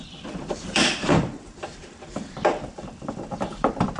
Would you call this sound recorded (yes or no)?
no